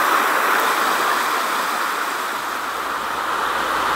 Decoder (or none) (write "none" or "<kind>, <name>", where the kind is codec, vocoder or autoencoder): none